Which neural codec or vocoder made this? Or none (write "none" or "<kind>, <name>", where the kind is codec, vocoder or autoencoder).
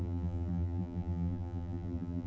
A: vocoder, BigVGAN v2